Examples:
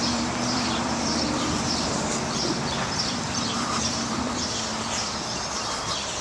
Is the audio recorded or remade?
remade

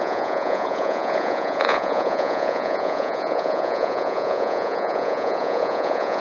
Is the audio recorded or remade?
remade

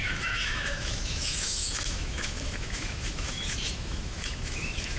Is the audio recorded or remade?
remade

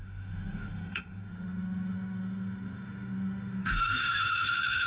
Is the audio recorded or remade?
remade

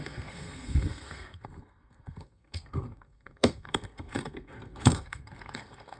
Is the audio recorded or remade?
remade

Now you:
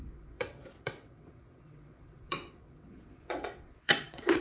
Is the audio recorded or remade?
remade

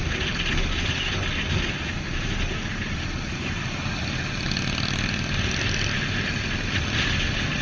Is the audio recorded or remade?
recorded